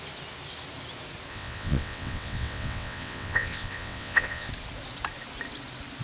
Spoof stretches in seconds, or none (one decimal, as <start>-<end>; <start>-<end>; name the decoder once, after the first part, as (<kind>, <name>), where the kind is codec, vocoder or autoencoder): 1.3-4.5 (vocoder, WaveNeXt)